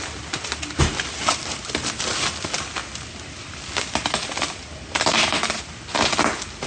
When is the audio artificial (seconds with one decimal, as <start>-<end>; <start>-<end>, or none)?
none